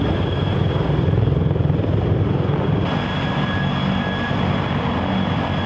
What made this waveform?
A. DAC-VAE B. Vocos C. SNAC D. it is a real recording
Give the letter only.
D